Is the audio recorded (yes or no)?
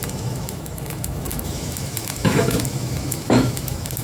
no